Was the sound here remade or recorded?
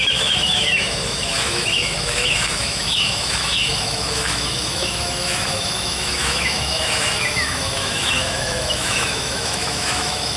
remade